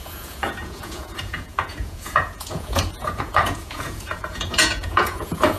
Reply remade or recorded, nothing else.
remade